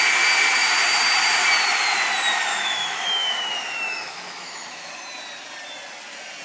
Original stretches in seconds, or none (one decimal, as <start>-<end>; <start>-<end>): 0.0-2.5; 4.9-6.4